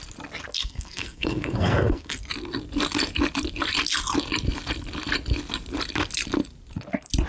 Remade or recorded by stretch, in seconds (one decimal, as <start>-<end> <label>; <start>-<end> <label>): 0.0-0.6 recorded; 0.6-2.2 remade; 2.2-7.3 recorded